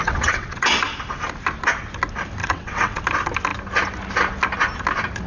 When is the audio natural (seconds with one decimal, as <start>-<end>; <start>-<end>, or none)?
0.8-2.4; 3.0-5.3